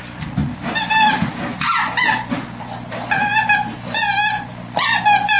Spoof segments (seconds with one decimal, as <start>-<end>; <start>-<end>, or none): none

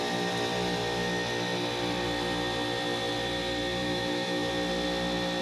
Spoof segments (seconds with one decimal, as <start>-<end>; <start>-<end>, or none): 3.8-4.5

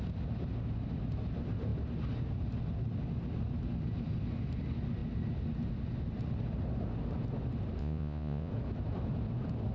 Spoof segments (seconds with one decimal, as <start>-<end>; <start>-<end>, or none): 7.8-8.5

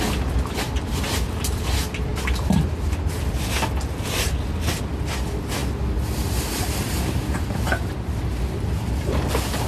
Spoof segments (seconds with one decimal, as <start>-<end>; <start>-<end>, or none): none

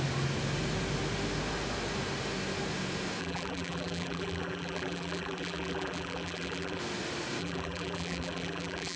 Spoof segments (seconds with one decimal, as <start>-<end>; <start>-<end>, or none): 3.2-6.8; 7.4-9.0

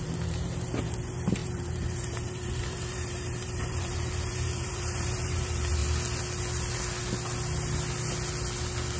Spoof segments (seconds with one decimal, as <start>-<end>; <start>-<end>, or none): 0.0-5.8

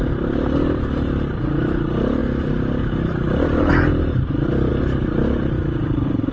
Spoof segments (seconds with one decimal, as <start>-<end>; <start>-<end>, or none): 2.2-4.7